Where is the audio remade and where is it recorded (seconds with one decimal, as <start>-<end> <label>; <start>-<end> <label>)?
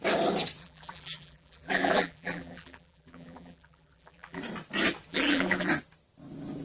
0.0-0.6 recorded; 0.6-4.4 remade; 4.4-5.1 recorded; 5.1-5.7 remade; 5.7-6.6 recorded